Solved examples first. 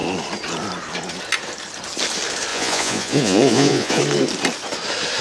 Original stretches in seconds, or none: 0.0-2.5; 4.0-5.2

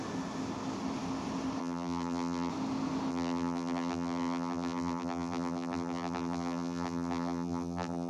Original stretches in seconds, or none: 0.0-1.6; 2.5-3.1

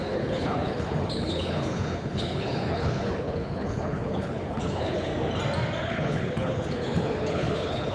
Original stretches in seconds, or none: 5.1-5.8